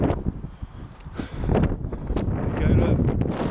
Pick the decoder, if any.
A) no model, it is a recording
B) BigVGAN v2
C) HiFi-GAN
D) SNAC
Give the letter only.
A